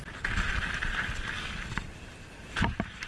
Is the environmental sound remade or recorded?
recorded